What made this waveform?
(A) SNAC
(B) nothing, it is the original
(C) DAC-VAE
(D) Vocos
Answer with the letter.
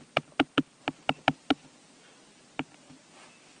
B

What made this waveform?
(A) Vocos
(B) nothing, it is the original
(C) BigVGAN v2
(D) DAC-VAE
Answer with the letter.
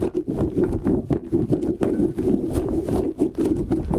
B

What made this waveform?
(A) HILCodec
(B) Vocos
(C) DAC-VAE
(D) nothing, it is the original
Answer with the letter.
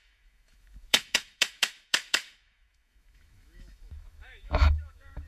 C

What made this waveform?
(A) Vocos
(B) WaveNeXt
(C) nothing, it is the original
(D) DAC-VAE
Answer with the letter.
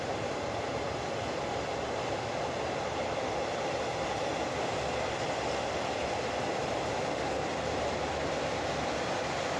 C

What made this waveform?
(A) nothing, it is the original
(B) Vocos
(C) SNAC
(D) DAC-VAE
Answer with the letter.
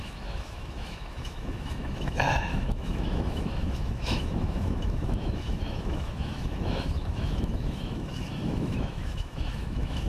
D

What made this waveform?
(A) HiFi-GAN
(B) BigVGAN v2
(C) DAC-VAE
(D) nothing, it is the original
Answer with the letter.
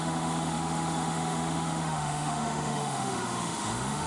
C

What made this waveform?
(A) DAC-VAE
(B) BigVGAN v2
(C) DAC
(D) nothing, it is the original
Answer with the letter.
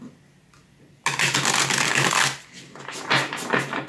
D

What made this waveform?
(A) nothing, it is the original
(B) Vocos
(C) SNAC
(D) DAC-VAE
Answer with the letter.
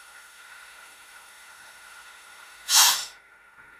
D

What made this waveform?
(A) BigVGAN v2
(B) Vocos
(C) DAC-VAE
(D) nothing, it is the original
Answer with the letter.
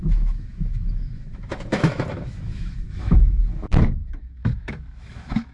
C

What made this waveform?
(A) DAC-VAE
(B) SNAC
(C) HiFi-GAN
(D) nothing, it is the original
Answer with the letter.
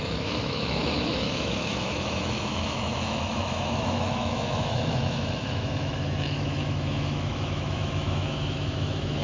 A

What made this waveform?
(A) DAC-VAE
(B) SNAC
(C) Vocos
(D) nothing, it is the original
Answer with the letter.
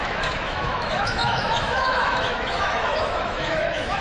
A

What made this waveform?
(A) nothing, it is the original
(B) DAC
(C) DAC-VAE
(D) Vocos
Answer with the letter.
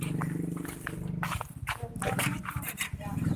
A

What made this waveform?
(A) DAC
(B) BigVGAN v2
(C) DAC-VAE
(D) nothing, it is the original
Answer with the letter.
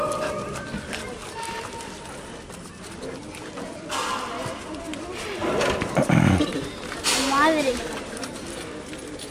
D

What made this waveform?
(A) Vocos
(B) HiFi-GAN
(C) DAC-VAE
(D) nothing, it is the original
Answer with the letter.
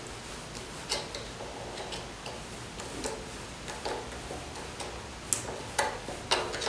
D